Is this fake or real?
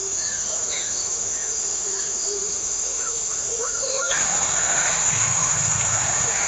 fake